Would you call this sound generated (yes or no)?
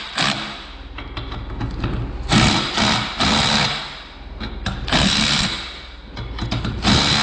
no